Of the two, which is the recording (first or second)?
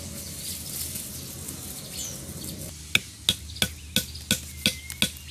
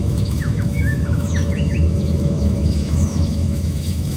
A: first